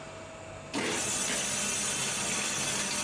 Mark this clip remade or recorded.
recorded